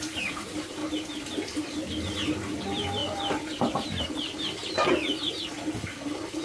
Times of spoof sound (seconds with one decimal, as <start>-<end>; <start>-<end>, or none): none